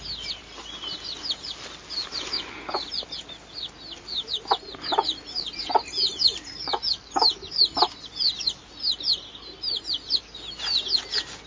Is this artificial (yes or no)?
no